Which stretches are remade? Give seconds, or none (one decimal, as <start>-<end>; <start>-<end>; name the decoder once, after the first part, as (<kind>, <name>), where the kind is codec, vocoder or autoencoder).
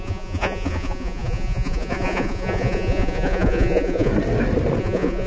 0.0-4.1 (vocoder, Vocos); 4.8-5.3